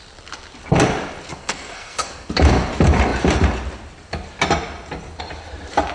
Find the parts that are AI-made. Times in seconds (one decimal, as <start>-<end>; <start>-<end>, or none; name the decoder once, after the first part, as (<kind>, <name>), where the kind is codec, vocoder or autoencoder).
1.4-2.3 (codec, SNAC)